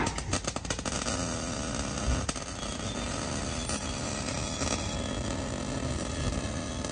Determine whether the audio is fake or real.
real